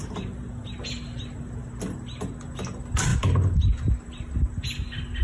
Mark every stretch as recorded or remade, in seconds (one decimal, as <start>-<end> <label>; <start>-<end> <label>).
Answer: 0.0-5.2 recorded